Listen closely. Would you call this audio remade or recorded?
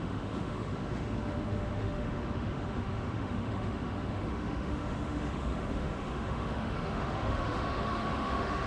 remade